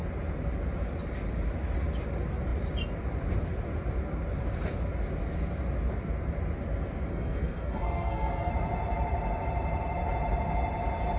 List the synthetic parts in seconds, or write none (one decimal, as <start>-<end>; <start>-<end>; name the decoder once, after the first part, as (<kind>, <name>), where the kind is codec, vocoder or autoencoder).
7.1-8.5 (codec, SNAC)